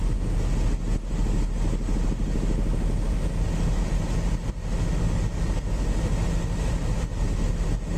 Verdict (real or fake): real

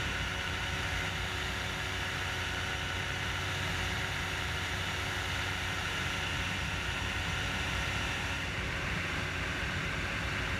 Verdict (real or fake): fake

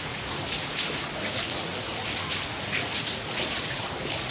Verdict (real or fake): fake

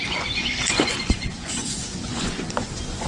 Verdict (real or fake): fake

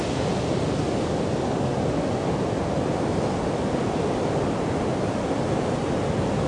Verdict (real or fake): real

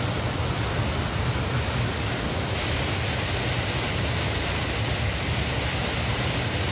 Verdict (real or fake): real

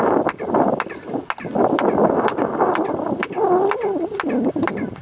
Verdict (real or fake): real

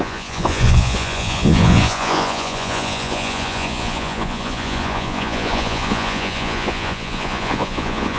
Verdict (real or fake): fake